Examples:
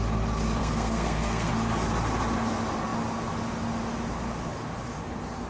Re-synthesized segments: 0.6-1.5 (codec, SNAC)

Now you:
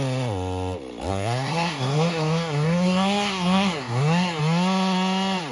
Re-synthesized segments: 1.1-4.4 (codec, SNAC)

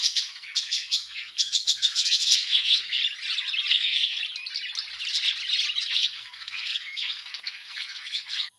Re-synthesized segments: 0.0-3.0 (codec, SNAC); 3.7-4.2; 5.9-8.6

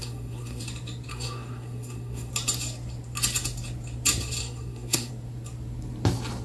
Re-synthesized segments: 0.0-0.6 (codec, SNAC); 1.1-2.3; 4.4-5.1

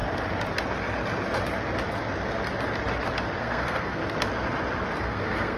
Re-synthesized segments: 3.4-4.0 (codec, SNAC); 5.0-5.6

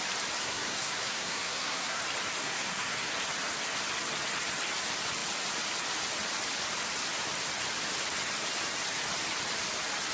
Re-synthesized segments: 0.4-2.0 (codec, SNAC); 2.4-3.1

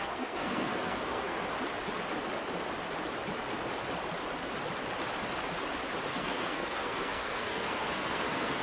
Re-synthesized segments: 0.0-1.5 (codec, SNAC); 6.1-8.6

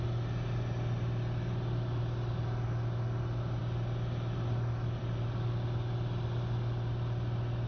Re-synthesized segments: none